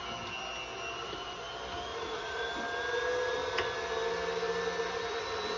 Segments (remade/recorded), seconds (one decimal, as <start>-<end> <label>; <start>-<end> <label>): 0.0-1.9 recorded; 1.9-2.5 remade; 2.5-5.6 recorded